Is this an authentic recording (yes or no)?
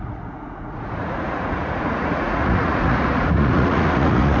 no